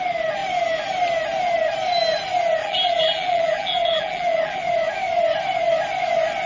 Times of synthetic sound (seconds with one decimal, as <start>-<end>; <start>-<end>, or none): 2.6-4.6